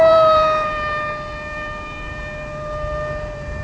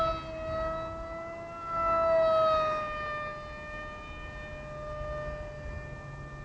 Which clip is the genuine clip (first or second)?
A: second